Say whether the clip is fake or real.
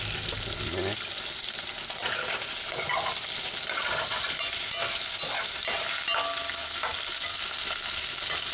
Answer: real